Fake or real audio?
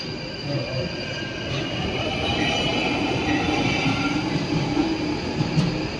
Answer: real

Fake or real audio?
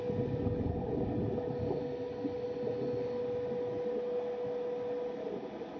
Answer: real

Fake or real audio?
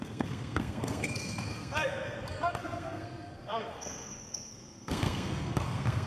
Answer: fake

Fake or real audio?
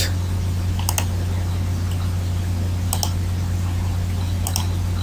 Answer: real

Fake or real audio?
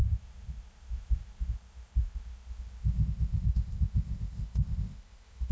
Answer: fake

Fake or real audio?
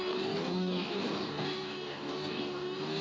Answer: fake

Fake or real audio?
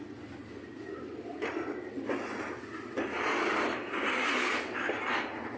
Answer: real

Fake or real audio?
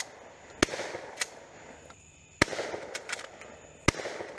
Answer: real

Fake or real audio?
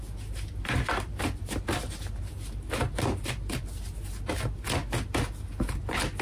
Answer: real